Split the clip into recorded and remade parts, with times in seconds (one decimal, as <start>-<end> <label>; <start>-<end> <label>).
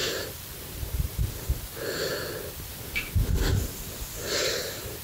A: 0.0-1.6 remade; 1.6-4.4 recorded; 4.4-5.0 remade